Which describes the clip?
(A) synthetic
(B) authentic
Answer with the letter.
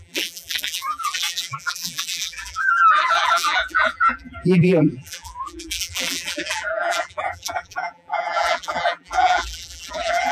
A